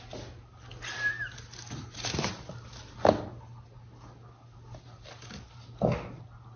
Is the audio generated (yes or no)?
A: no